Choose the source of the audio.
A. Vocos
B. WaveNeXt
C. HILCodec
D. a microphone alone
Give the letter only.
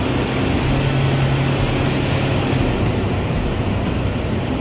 D